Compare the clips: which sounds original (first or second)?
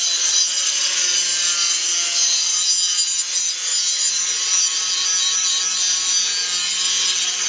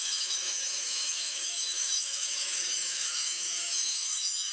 first